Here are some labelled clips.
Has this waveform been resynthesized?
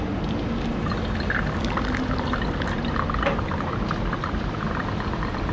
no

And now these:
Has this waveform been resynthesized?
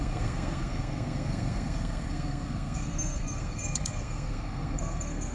yes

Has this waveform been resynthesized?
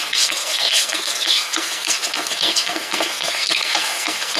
yes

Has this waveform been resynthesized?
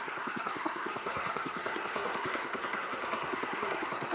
yes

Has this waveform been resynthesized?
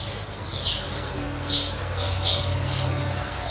yes